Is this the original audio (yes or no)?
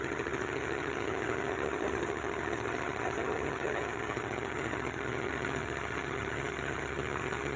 no